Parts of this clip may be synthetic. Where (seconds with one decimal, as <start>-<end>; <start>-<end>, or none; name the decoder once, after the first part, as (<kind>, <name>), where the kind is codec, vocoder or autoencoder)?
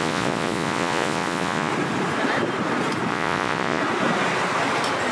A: 0.0-1.7 (vocoder, Vocos); 3.1-3.8